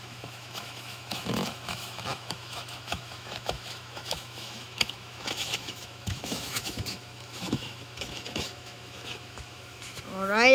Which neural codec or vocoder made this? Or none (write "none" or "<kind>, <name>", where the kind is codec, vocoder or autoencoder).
autoencoder, DAC-VAE